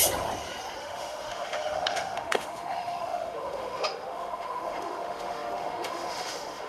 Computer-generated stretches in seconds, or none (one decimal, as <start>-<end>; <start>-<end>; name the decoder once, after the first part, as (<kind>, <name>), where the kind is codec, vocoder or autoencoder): 0.8-6.7 (autoencoder, DAC-VAE)